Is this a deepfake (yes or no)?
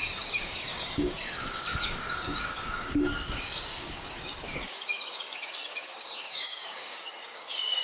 yes